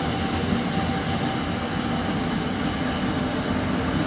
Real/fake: real